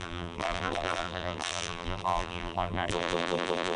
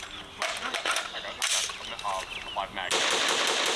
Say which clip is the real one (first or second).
second